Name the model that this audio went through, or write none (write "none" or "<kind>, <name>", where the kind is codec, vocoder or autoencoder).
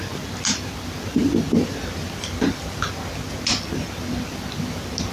none